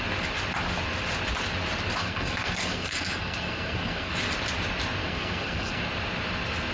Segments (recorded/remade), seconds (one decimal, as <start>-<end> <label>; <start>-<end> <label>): 0.0-2.0 recorded; 2.0-4.1 remade; 4.1-5.0 recorded; 5.0-5.9 remade; 5.9-6.7 recorded